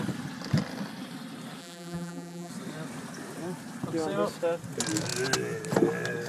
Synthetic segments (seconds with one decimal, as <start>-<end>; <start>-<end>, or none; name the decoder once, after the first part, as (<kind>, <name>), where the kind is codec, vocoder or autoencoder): 1.6-2.5 (vocoder, BigVGAN v2)